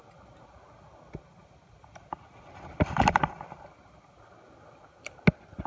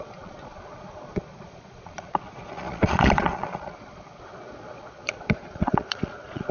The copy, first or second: second